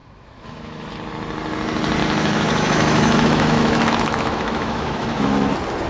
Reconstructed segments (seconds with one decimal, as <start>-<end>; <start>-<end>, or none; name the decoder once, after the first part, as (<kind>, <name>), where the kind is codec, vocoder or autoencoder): 0.0-0.9 (autoencoder, DAC-VAE); 2.0-5.5